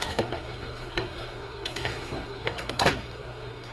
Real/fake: fake